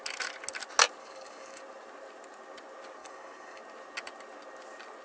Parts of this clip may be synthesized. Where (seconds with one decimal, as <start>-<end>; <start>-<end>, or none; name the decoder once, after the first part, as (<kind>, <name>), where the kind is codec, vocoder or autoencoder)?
1.0-1.6 (codec, DAC); 3.0-3.6